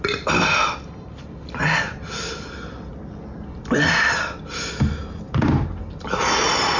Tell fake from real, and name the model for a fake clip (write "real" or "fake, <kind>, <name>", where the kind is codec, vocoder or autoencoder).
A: real